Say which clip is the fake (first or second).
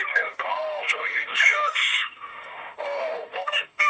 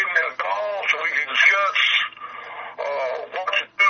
first